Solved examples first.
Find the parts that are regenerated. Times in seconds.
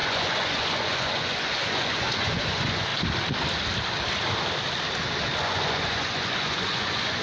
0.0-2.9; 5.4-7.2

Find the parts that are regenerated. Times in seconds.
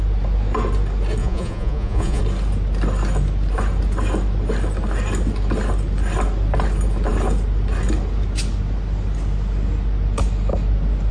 1.2-2.2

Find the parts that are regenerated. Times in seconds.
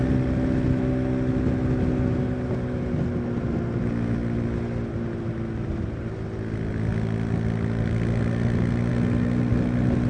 none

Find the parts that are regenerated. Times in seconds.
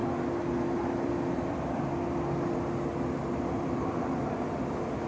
none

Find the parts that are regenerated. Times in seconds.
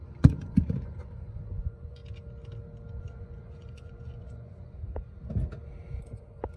0.0-2.0; 3.0-4.8; 6.0-6.6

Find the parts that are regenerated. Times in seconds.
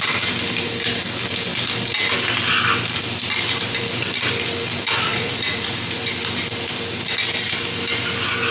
5.1-5.8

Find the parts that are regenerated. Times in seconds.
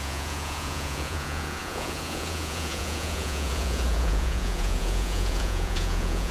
0.0-6.3